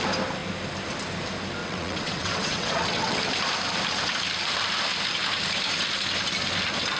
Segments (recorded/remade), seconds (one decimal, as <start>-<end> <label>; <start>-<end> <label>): 0.0-1.6 recorded; 1.6-3.2 remade; 3.2-7.0 recorded